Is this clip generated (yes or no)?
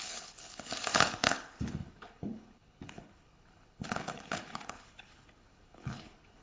yes